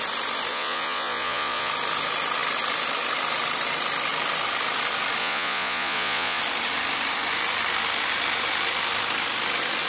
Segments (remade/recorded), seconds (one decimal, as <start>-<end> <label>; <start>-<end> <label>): 0.0-0.5 recorded; 0.5-1.7 remade; 1.7-5.2 recorded; 5.2-6.4 remade; 6.4-9.9 recorded